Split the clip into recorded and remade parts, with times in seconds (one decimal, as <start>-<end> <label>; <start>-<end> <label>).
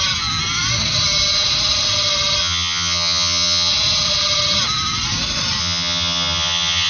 0.0-2.4 recorded; 2.4-3.7 remade; 3.7-5.6 recorded; 5.6-6.9 remade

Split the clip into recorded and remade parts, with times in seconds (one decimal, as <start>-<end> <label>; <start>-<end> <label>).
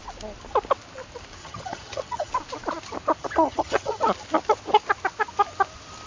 0.0-1.4 recorded; 1.4-2.3 remade; 2.3-3.2 recorded; 3.2-4.0 remade; 4.0-6.1 recorded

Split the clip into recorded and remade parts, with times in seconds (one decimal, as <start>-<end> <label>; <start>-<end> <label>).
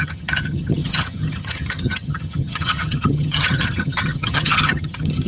0.0-5.3 remade